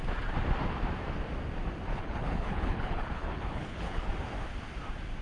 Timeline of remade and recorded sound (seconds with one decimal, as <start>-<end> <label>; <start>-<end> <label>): 0.0-1.9 recorded; 1.9-4.1 remade; 4.1-5.2 recorded

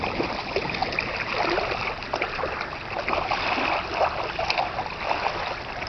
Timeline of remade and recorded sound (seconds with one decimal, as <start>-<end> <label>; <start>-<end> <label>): 0.0-5.9 recorded

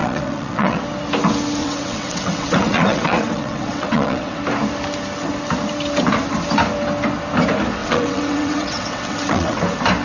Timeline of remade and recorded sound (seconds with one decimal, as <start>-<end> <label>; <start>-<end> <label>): 0.0-0.8 remade; 0.8-1.6 recorded; 1.6-4.4 remade; 4.4-7.8 recorded; 7.8-9.6 remade; 9.6-10.0 recorded

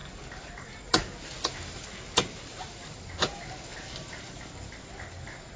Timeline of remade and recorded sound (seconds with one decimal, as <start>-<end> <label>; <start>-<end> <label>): 0.0-5.6 recorded

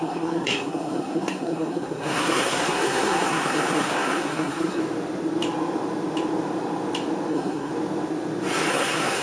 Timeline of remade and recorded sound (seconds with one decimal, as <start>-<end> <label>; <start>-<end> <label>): 0.0-4.8 remade; 4.8-7.3 recorded; 7.3-7.7 remade; 7.7-8.7 recorded; 8.7-9.2 remade